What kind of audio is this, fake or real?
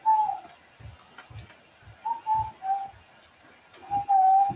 real